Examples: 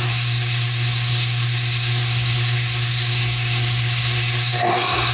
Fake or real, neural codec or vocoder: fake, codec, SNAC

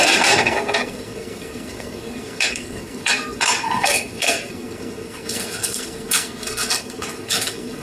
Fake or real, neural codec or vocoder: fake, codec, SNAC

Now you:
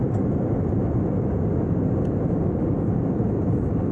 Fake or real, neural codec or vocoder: real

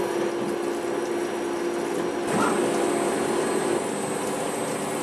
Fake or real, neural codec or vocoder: real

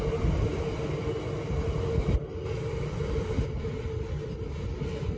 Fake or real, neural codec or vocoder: real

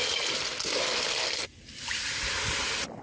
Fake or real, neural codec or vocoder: real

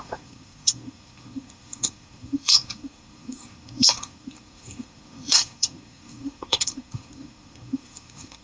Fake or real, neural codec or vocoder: fake, codec, SNAC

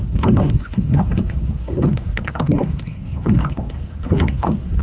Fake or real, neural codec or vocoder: fake, codec, SNAC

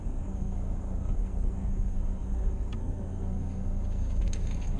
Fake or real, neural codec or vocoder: fake, codec, SNAC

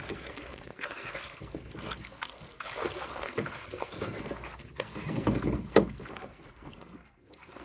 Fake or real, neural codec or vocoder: fake, codec, SNAC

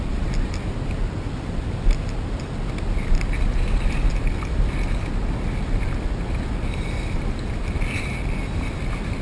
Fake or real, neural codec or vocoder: real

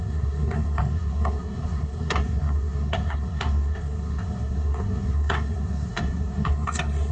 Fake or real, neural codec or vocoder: fake, codec, SNAC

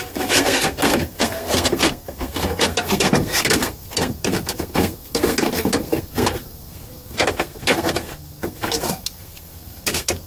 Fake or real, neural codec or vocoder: fake, codec, SNAC